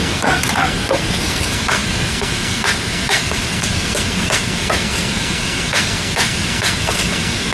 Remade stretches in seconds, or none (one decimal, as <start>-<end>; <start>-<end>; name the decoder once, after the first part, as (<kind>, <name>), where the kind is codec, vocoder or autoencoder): 0.0-7.5 (codec, SNAC)